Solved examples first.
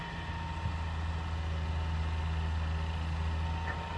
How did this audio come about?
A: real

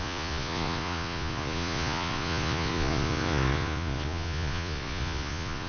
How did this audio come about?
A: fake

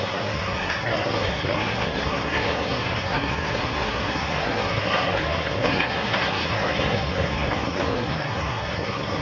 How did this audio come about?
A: fake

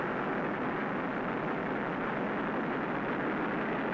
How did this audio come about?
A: real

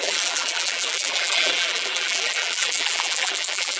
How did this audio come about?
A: fake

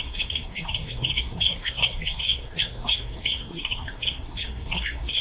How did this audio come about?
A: fake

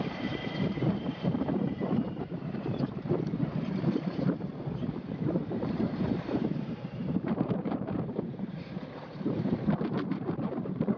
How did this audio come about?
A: fake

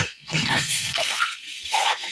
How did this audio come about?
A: fake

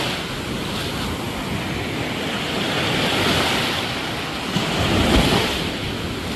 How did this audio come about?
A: real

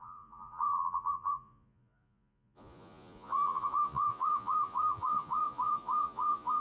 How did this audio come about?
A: fake